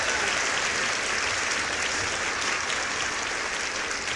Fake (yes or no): no